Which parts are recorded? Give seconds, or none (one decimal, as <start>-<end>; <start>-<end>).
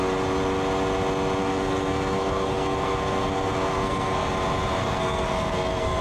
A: 0.0-1.4; 4.3-4.8